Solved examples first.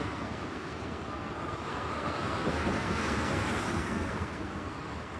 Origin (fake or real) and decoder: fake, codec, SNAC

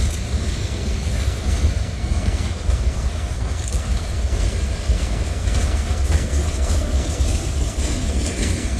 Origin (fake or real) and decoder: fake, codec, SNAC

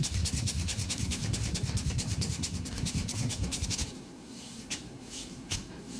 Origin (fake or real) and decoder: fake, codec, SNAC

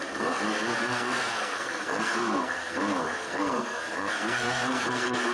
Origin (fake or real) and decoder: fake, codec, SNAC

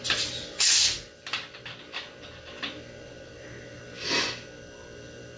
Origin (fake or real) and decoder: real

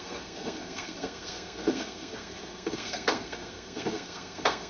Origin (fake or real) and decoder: fake, codec, SNAC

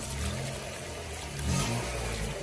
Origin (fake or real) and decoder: real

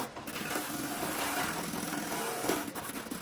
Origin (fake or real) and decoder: real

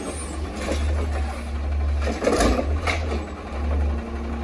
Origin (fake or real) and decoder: real